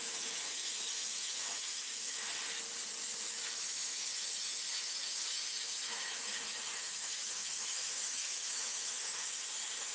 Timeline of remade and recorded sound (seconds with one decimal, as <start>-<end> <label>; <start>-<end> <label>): 0.0-2.3 remade; 2.3-3.6 recorded; 3.6-9.9 remade